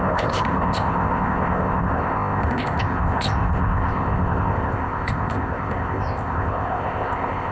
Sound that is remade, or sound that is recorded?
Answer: remade